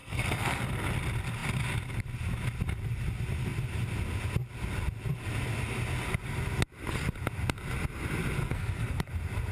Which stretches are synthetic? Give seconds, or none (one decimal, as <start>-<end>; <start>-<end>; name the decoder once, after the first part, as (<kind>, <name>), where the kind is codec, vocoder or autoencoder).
0.0-0.6 (codec, SNAC); 8.4-9.1